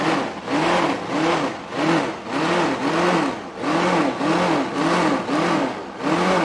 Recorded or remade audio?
recorded